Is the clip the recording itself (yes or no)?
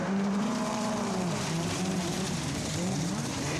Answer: no